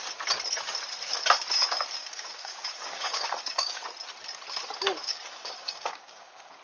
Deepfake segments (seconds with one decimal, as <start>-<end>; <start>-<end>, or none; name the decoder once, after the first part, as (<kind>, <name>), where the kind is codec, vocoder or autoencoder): 2.0-3.8 (codec, DAC); 5.1-6.6